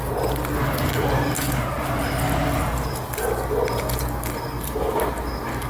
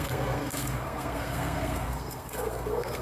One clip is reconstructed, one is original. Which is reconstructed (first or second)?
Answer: second